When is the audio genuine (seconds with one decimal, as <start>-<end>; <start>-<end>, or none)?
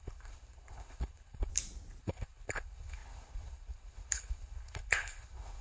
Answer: 1.5-2.0